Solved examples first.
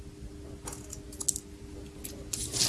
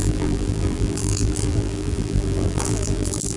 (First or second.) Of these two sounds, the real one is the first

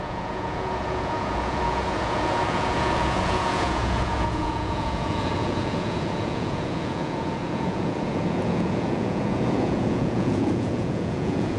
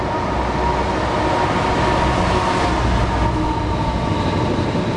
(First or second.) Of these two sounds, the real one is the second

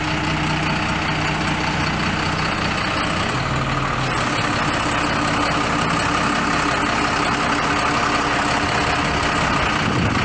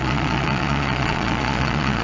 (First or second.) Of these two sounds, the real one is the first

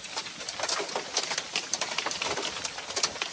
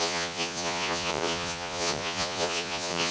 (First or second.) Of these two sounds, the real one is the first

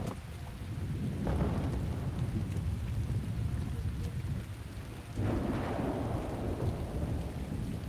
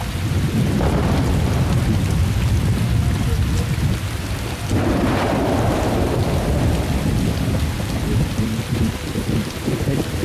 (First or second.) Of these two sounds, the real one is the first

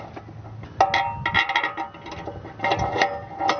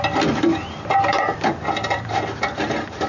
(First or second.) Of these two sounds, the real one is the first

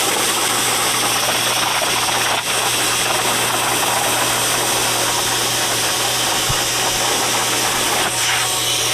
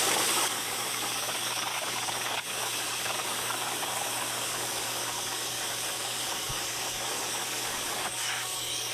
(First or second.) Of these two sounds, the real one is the first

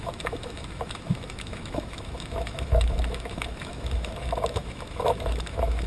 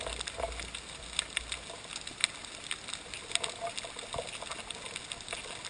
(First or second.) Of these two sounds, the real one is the second